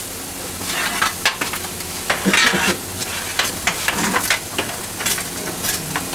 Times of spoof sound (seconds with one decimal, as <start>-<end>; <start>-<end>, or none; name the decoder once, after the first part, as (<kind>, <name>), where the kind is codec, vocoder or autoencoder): 3.0-3.8 (vocoder, BigVGAN v2)